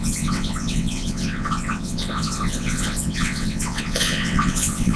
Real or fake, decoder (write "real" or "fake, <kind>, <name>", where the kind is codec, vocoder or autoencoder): fake, vocoder, WaveNeXt